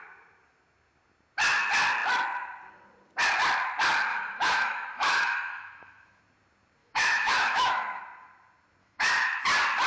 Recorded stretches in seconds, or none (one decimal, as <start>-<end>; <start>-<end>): 0.0-4.1; 6.2-6.8; 8.0-8.8; 9.4-9.9